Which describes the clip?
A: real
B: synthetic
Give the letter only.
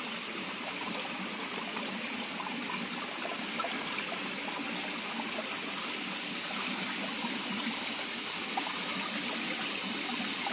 A